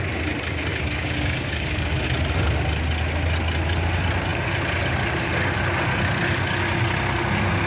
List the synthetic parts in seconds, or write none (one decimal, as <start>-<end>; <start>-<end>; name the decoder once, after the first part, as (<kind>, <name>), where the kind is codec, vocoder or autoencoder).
0.7-2.0 (codec, DAC)